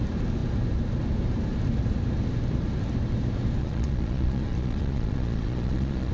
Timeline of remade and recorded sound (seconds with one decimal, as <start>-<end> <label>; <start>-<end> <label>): 0.0-3.6 recorded; 3.6-6.1 remade